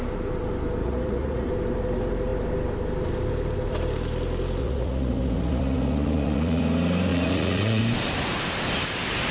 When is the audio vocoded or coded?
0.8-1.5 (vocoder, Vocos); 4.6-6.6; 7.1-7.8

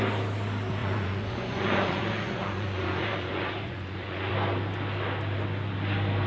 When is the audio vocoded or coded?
0.8-4.3 (vocoder, Vocos)

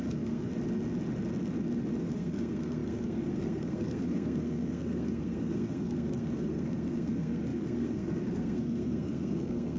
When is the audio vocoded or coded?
0.0-0.5 (codec, SNAC); 2.0-9.8

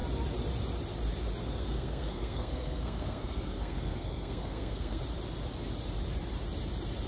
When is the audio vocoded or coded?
1.4-5.0 (codec, SNAC)